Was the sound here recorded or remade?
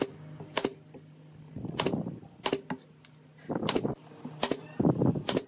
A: recorded